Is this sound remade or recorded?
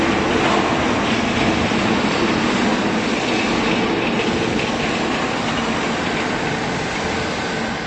recorded